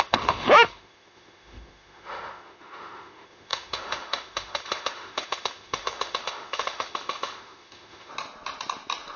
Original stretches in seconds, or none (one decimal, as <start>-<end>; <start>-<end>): 8.1-9.2